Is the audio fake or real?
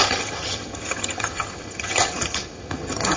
fake